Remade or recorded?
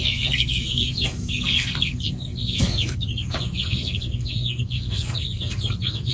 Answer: remade